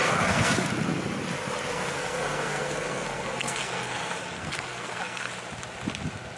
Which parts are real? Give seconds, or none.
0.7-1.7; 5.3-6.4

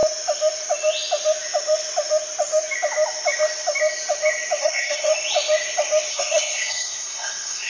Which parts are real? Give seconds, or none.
0.0-4.6; 5.1-6.1

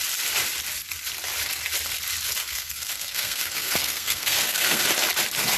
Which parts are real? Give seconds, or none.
0.0-2.4; 4.8-5.6

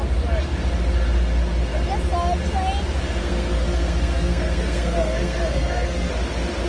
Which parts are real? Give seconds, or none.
0.0-3.2; 6.1-6.7

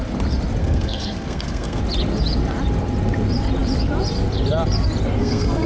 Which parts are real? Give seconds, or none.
0.0-0.6; 1.8-5.2

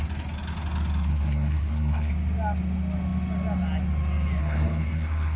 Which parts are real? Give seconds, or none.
0.0-1.1; 2.1-4.4

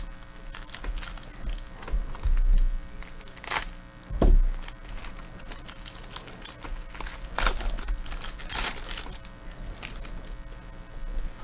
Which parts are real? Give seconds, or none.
0.0-11.4